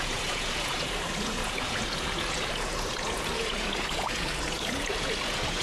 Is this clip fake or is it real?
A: fake